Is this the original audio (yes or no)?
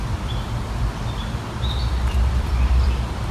no